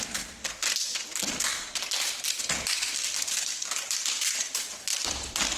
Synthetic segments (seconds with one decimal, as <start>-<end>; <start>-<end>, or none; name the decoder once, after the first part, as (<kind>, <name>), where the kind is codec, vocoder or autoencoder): 1.5-3.7 (vocoder, BigVGAN v2)